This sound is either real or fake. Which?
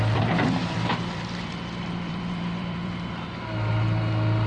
fake